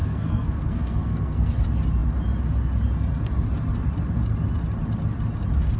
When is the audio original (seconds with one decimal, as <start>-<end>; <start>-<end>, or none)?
1.5-5.8